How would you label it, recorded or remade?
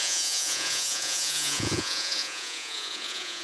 remade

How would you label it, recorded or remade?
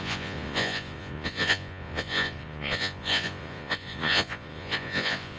remade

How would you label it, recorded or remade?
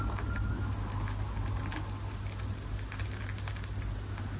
recorded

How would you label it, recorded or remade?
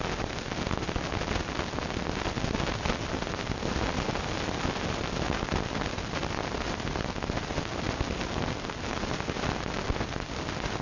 recorded